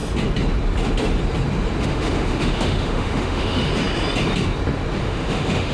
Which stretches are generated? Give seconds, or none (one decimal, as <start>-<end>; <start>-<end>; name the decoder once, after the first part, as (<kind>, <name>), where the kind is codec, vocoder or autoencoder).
1.8-3.7 (autoencoder, DAC-VAE); 5.0-5.7